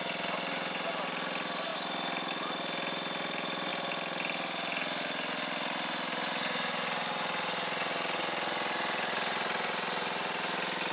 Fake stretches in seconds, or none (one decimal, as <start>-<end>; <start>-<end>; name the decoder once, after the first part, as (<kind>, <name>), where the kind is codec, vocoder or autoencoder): none